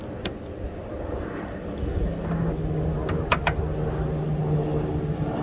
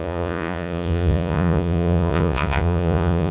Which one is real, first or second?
first